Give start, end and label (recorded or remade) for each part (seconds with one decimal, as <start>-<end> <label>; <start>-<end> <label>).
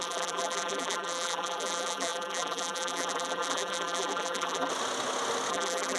0.0-4.7 remade; 4.7-5.5 recorded; 5.5-6.0 remade